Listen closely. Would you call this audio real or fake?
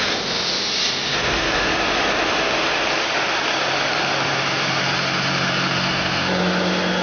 real